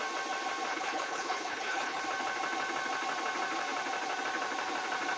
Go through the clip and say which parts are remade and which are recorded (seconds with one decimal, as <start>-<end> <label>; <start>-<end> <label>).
0.0-0.7 recorded; 0.7-2.0 remade; 2.0-5.2 recorded